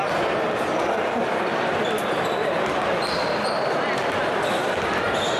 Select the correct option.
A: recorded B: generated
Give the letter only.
A